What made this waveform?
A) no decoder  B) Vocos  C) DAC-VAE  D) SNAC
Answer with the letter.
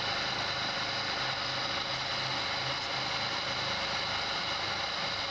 A